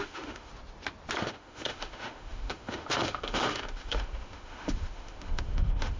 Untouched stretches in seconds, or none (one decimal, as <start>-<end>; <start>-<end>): 0.5-1.2